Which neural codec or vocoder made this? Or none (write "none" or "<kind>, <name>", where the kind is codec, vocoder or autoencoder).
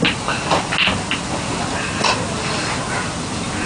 none